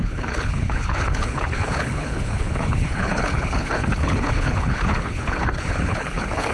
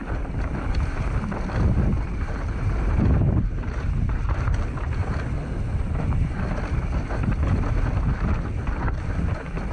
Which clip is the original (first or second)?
second